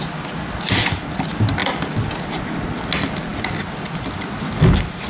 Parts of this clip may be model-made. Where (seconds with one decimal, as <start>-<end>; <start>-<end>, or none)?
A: none